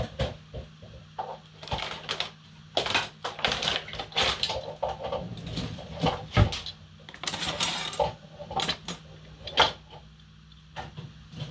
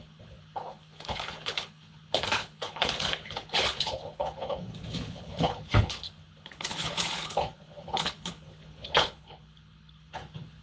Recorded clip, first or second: first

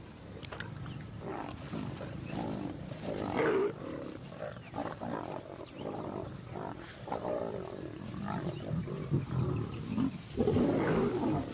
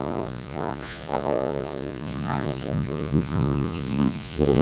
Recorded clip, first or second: first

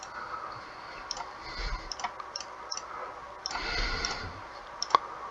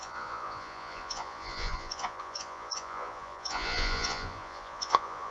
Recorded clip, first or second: first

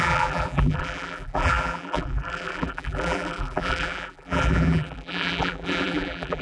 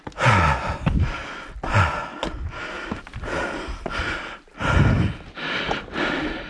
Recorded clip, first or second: second